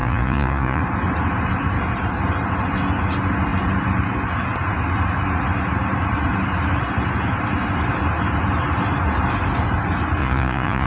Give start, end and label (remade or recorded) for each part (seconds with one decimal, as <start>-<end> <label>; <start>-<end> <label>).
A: 0.0-0.8 remade; 0.8-10.2 recorded; 10.2-10.9 remade